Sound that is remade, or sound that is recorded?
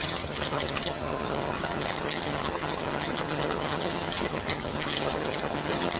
remade